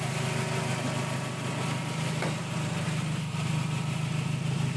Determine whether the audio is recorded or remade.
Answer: recorded